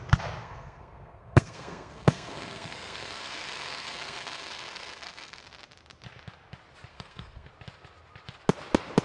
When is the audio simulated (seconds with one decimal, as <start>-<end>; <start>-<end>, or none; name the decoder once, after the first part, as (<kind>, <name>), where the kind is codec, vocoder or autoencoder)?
0.4-5.4 (codec, SNAC); 6.9-7.5